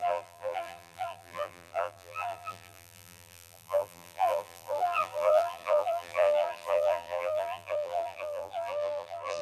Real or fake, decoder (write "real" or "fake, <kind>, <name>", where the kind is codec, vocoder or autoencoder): fake, vocoder, BigVGAN v2